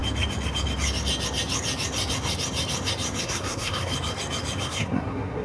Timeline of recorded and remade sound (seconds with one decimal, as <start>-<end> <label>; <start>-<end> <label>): 0.0-3.2 recorded; 3.2-3.9 remade; 3.9-4.6 recorded; 4.6-5.4 remade